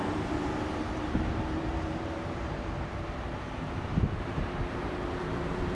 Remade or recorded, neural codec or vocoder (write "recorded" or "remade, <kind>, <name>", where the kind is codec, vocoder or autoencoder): remade, vocoder, BigVGAN v2